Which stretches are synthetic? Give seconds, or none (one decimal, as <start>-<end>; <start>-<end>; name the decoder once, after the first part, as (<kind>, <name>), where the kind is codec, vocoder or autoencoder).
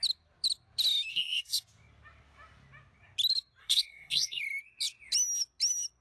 1.1-1.6 (codec, SNAC); 3.6-4.4